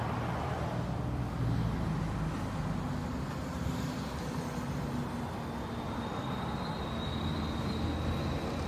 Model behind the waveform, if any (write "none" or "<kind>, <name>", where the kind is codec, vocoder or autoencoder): none